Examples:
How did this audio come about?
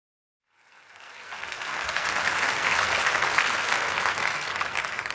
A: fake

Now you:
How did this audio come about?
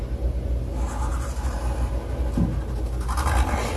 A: real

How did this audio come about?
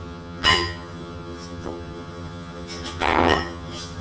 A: fake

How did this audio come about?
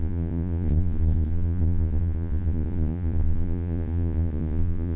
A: fake